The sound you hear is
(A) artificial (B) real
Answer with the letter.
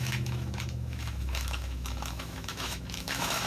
A